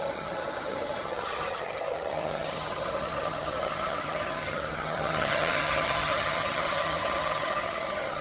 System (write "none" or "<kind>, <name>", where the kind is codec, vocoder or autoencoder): vocoder, HiFi-GAN